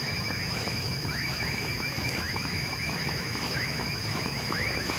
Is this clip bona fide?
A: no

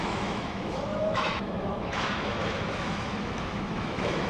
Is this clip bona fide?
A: no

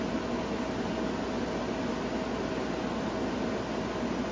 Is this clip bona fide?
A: yes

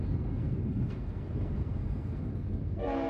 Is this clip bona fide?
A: no